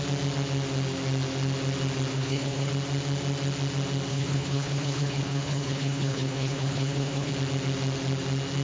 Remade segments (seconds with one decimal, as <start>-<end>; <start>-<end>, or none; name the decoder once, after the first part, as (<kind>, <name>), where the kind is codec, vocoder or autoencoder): 2.1-2.7 (codec, HILCodec); 4.1-7.3